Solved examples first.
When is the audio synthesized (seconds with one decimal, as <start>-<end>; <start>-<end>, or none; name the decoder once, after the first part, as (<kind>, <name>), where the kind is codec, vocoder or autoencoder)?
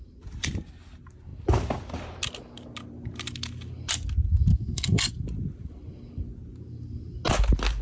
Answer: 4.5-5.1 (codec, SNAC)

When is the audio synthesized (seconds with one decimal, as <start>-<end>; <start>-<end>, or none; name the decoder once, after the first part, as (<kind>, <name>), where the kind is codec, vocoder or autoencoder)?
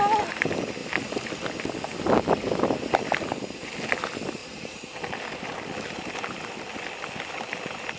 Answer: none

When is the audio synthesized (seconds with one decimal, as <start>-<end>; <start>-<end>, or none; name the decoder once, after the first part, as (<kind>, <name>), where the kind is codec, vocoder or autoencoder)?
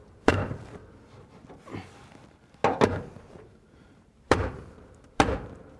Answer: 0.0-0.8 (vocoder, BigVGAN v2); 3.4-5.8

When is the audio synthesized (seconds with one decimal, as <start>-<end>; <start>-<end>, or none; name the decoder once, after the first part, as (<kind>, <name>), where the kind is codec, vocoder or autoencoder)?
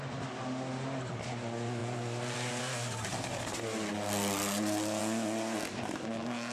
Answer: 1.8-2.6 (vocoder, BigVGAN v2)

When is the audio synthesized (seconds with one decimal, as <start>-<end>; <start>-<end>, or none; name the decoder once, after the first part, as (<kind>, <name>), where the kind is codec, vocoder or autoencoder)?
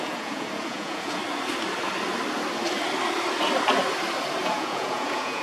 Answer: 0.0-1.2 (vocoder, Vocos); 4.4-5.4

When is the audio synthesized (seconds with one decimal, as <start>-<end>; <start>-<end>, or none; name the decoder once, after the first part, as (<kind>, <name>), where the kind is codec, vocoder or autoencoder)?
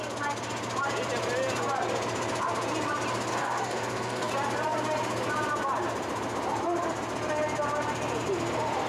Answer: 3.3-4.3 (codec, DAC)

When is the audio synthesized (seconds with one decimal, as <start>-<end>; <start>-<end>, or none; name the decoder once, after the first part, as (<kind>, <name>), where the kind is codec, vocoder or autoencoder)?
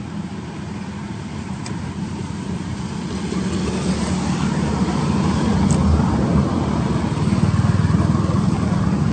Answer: 1.0-2.7 (vocoder, BigVGAN v2)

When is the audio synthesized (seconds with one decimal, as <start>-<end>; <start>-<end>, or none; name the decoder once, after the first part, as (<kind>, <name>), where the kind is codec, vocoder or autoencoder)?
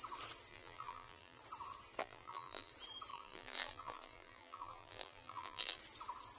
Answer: 0.5-1.4 (vocoder, BigVGAN v2); 2.0-2.7; 3.1-5.8